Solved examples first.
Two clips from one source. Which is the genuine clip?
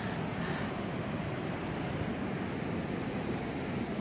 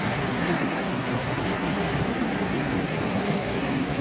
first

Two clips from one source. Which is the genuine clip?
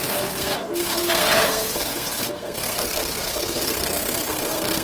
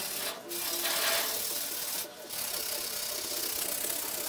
second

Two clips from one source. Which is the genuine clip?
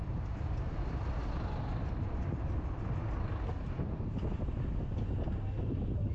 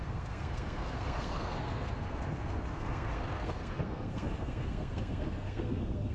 first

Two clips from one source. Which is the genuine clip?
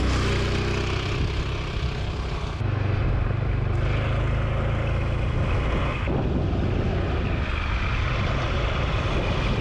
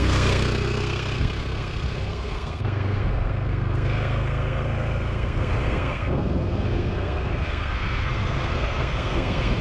first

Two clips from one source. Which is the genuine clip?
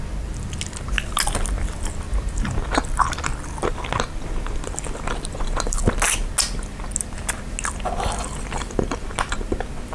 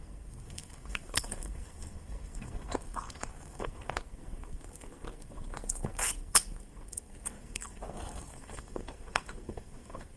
first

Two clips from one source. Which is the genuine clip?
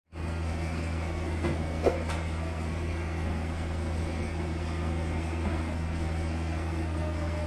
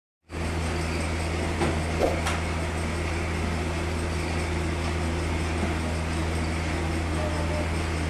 second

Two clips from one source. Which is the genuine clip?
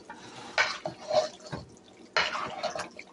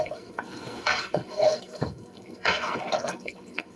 first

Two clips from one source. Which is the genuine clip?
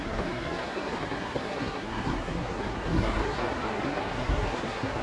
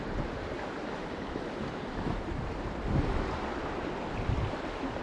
second